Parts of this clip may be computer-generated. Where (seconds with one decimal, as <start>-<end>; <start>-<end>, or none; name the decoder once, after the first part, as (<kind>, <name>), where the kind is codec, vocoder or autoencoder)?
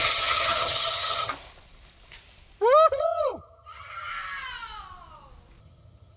0.0-1.3 (vocoder, HiFi-GAN); 2.9-4.1; 5.6-6.2